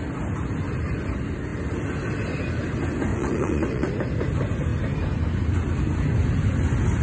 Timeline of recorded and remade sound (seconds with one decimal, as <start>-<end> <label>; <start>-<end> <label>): 0.0-3.1 recorded; 3.1-3.9 remade; 3.9-7.0 recorded